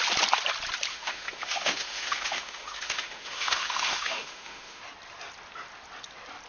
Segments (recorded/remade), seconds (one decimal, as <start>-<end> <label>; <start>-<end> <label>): 0.0-0.9 recorded; 0.9-4.8 remade; 4.8-6.5 recorded